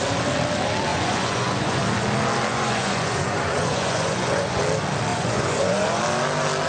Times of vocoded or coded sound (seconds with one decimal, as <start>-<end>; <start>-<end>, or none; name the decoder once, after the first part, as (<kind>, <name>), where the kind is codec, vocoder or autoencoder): 0.9-1.8 (vocoder, Vocos); 2.5-4.6; 5.1-6.0

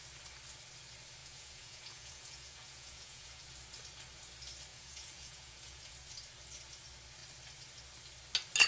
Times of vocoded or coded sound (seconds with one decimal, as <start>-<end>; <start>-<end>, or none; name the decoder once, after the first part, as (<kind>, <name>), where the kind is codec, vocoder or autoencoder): 1.2-3.4 (vocoder, Vocos); 4.7-5.9

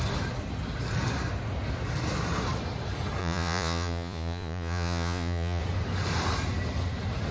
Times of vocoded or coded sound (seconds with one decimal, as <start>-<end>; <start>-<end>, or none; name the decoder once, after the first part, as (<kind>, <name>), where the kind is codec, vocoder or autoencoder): 3.2-5.6 (vocoder, Vocos)

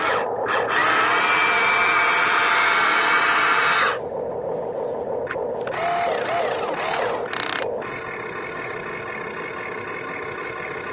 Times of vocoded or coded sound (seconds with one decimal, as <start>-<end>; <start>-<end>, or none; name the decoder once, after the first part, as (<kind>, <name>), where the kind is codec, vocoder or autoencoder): none

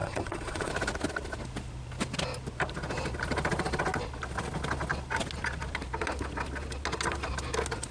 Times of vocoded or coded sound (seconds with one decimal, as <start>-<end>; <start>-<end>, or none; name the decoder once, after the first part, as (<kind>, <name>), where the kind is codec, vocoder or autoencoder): 0.0-0.7 (vocoder, Vocos)

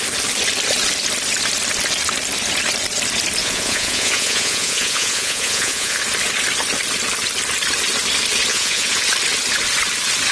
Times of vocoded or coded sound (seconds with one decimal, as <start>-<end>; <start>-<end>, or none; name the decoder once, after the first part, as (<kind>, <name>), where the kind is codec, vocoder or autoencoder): 3.4-6.0 (vocoder, Vocos); 8.5-9.0

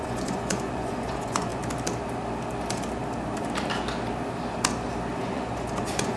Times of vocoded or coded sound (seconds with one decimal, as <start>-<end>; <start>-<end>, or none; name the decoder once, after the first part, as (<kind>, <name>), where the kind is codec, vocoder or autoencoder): 0.0-1.5 (vocoder, Vocos); 5.2-6.2